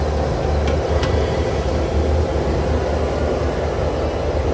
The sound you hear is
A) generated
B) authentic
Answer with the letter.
B